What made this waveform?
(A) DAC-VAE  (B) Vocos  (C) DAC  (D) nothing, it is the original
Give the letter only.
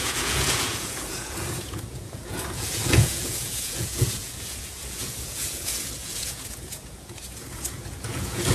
B